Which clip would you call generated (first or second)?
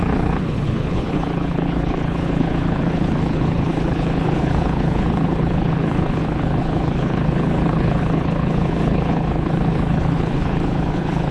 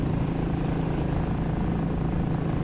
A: first